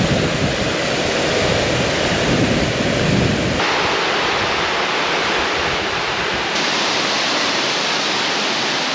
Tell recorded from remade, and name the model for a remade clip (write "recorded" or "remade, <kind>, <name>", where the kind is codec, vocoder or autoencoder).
recorded